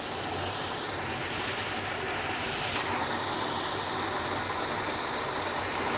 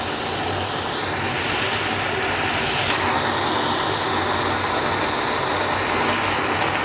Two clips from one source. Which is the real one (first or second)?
second